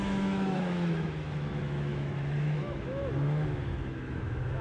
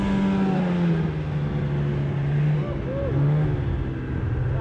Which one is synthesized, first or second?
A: first